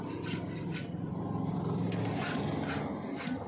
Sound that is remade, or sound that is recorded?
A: recorded